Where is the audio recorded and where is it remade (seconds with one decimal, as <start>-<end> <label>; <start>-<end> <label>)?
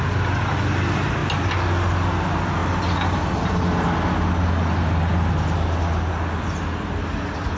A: 0.0-7.6 recorded